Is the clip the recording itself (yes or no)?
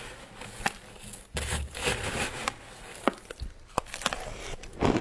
yes